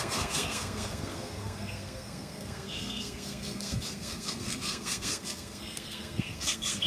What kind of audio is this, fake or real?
fake